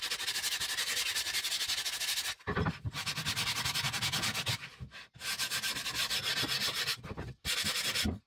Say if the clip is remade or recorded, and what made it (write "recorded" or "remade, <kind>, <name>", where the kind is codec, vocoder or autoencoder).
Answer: recorded